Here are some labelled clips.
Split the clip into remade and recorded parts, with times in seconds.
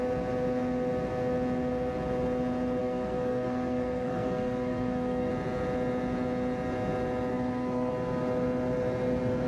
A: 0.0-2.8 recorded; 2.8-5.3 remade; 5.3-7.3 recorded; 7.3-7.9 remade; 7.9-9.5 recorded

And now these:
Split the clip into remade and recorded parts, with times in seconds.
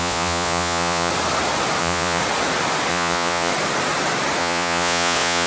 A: 0.0-1.1 remade; 1.1-1.8 recorded; 1.8-2.2 remade; 2.2-2.9 recorded; 2.9-3.5 remade; 3.5-4.4 recorded; 4.4-5.5 remade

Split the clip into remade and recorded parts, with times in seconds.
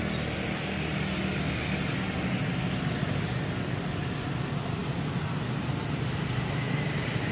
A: 0.0-7.3 recorded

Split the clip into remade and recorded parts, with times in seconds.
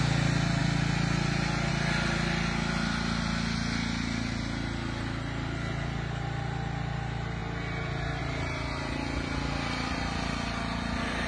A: 0.0-11.3 recorded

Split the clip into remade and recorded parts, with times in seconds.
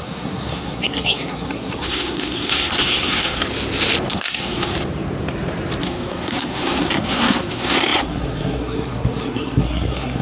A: 0.0-3.4 remade; 3.4-4.1 recorded; 4.1-4.7 remade; 4.7-5.8 recorded; 5.8-10.2 remade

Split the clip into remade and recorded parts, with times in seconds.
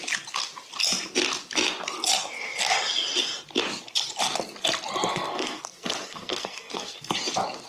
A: 0.0-5.1 recorded; 5.1-7.1 remade; 7.1-7.7 recorded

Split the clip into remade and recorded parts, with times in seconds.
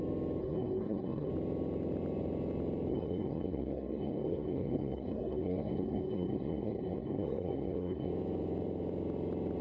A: 0.0-0.4 recorded; 0.4-1.3 remade; 1.3-2.9 recorded; 2.9-8.1 remade; 8.1-9.6 recorded